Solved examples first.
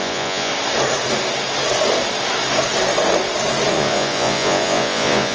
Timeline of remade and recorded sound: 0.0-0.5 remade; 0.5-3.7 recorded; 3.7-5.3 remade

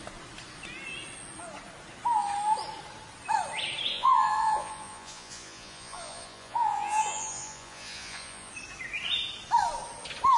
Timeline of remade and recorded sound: 0.0-3.9 recorded; 3.9-8.5 remade; 8.5-10.4 recorded

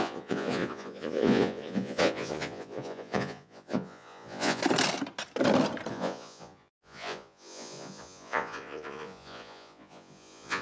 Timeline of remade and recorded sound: 0.0-4.6 remade; 4.6-5.9 recorded; 5.9-10.6 remade

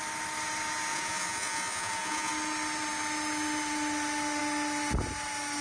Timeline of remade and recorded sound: 0.0-0.9 recorded; 0.9-2.3 remade; 2.3-5.6 recorded

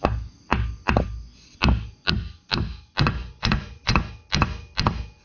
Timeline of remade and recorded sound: 0.0-3.2 recorded; 3.2-4.0 remade; 4.0-5.2 recorded

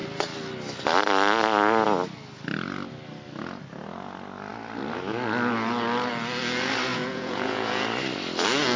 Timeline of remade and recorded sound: 0.0-6.9 recorded; 6.9-7.7 remade; 7.7-8.8 recorded

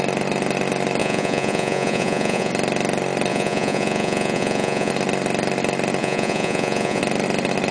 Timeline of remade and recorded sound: 0.0-1.0 recorded; 1.0-2.5 remade; 2.5-3.3 recorded; 3.3-4.9 remade; 4.9-6.0 recorded; 6.0-7.0 remade; 7.0-7.7 recorded

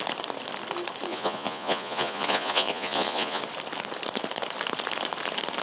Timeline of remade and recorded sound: 0.0-1.1 recorded; 1.1-3.4 remade; 3.4-5.6 recorded